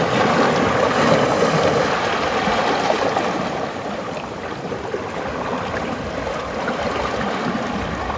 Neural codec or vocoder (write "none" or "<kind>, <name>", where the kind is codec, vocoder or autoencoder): none